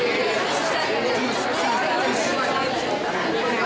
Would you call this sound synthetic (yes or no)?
no